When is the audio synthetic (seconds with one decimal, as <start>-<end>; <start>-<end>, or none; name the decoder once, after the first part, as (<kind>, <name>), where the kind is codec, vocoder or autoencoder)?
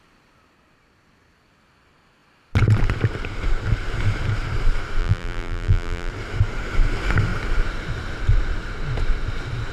5.0-6.1 (vocoder, BigVGAN v2)